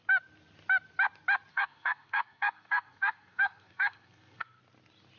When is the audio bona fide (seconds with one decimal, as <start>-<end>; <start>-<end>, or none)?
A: 0.0-1.5; 4.6-5.2